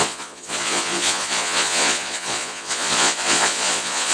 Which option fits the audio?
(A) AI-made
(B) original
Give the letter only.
A